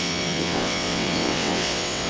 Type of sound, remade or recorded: remade